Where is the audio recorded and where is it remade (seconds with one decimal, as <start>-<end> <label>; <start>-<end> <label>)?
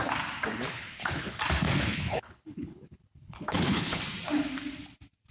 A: 0.0-0.7 recorded; 0.7-1.4 remade; 1.4-1.9 recorded; 1.9-4.0 remade; 4.0-5.3 recorded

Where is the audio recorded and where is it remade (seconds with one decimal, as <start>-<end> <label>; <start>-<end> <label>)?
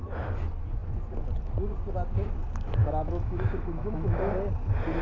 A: 0.0-2.8 recorded; 2.8-4.3 remade; 4.3-5.0 recorded